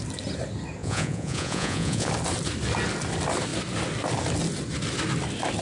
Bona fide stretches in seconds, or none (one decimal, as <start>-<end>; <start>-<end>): 0.0-0.8; 2.1-5.6